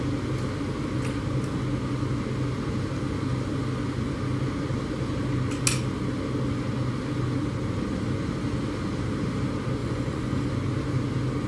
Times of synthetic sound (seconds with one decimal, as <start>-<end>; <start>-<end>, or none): 9.8-10.5